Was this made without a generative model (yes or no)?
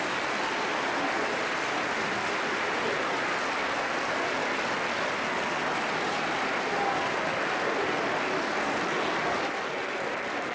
yes